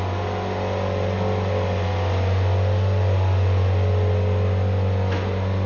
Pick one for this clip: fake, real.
real